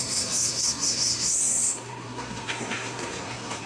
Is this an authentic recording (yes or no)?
no